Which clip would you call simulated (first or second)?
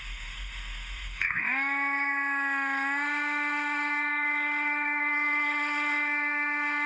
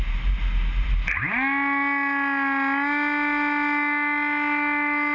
first